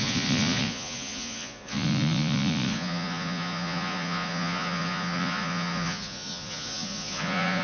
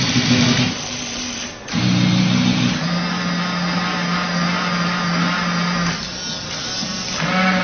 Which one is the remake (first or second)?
first